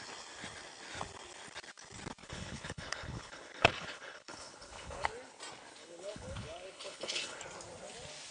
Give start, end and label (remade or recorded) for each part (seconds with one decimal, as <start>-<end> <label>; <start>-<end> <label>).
0.0-2.2 recorded; 2.2-5.1 remade; 5.1-5.8 recorded; 5.8-7.4 remade; 7.4-8.3 recorded